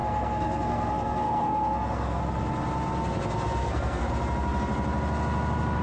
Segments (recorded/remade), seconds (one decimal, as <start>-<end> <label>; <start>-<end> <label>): 0.0-2.2 remade; 2.2-3.6 recorded; 3.6-4.1 remade; 4.1-5.8 recorded